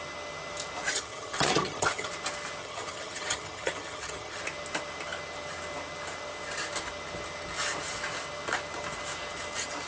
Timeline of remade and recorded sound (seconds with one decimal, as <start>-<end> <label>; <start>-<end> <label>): 0.0-0.9 recorded; 0.9-2.1 remade; 2.1-2.6 recorded; 2.6-4.4 remade; 4.4-9.9 recorded